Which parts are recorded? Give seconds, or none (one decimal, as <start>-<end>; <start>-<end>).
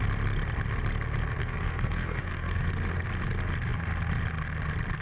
0.0-1.4; 2.7-5.0